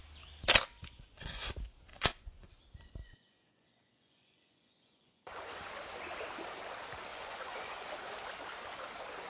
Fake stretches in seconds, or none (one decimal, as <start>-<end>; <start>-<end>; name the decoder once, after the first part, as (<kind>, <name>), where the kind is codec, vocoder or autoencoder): 0.8-1.5 (vocoder, Vocos); 1.9-2.5; 3.0-5.7; 7.1-7.9